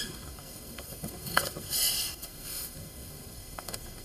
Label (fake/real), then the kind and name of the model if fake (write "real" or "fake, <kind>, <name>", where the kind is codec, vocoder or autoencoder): fake, codec, SNAC